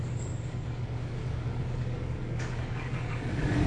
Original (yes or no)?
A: no